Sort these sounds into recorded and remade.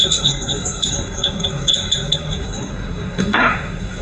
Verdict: remade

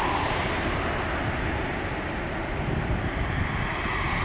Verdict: recorded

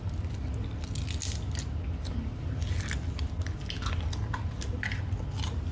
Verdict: recorded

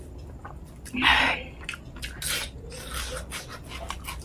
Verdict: recorded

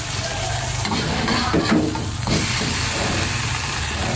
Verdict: recorded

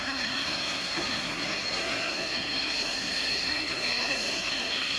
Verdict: remade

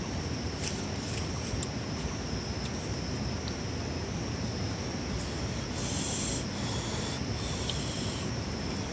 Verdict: recorded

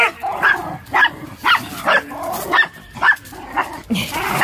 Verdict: recorded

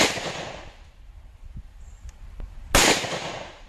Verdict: recorded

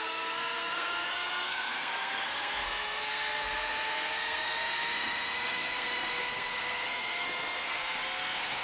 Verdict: remade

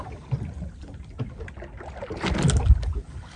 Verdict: recorded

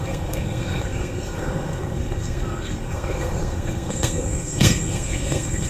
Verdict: remade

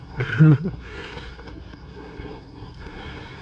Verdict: remade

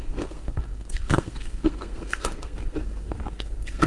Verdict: remade